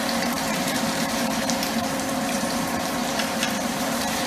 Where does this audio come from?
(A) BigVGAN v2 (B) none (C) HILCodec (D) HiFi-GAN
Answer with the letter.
A